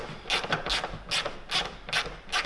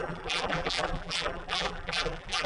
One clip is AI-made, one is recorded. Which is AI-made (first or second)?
second